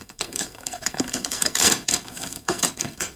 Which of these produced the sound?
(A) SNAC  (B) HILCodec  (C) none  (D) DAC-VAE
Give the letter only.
A